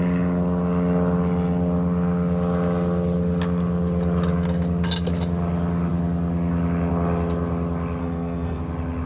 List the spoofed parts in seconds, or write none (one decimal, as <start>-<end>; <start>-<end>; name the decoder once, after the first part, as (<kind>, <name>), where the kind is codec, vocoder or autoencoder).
8.0-8.6 (codec, SNAC)